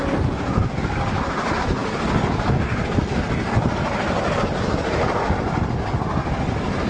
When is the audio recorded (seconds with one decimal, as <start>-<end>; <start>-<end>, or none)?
0.0-6.9